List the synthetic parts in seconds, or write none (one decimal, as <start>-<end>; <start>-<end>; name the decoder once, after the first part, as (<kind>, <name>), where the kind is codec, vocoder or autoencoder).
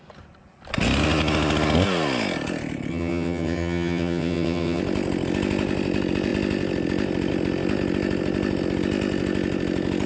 2.9-4.8 (vocoder, HiFi-GAN)